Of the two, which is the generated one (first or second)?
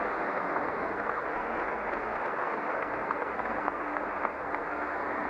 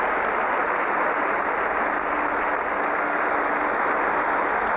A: first